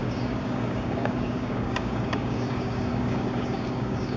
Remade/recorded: remade